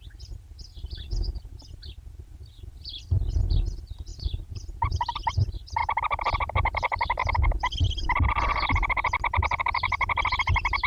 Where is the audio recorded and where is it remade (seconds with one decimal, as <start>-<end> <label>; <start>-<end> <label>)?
0.0-4.1 recorded; 4.1-4.7 remade; 4.7-10.9 recorded